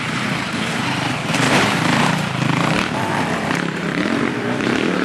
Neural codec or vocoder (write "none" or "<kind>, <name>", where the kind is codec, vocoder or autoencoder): vocoder, BigVGAN v2